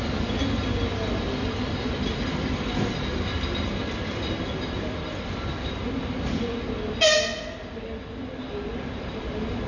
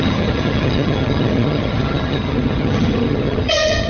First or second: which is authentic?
first